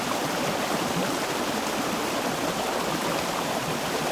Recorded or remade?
remade